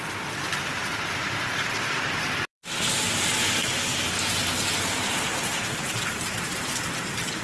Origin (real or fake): fake